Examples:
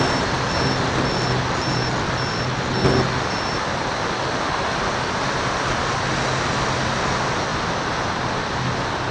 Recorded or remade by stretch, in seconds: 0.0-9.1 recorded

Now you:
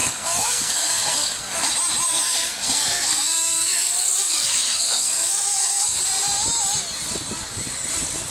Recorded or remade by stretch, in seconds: 0.0-1.7 remade; 1.7-2.1 recorded; 2.1-6.0 remade; 6.0-8.3 recorded

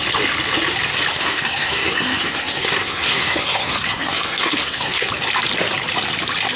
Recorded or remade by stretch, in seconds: 0.0-1.1 recorded; 1.1-5.1 remade; 5.1-6.6 recorded

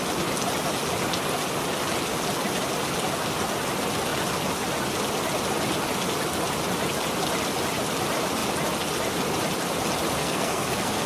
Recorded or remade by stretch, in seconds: 0.0-10.2 recorded; 10.2-11.1 remade

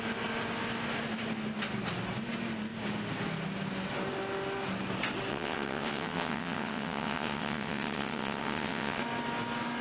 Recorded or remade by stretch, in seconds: 0.0-5.3 recorded; 5.3-9.0 remade; 9.0-9.8 recorded